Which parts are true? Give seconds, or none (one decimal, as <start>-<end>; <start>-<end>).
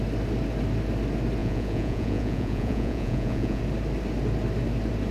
0.0-1.4; 3.6-5.1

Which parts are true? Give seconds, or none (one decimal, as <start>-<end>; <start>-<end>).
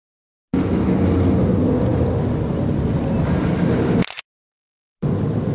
0.0-5.5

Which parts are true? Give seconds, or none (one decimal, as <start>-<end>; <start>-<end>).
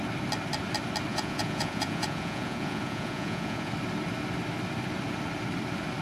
0.0-1.1; 3.7-6.0